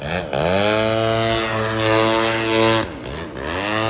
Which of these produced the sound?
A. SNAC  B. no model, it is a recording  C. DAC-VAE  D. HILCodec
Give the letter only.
B